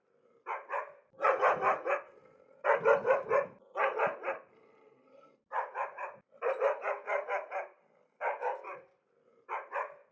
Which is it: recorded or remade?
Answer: remade